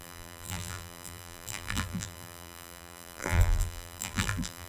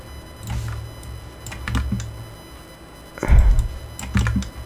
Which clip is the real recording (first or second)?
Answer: second